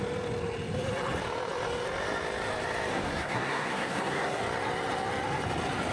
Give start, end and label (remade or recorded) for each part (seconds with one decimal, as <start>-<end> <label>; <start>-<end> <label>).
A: 0.0-2.9 recorded; 2.9-4.4 remade; 4.4-5.9 recorded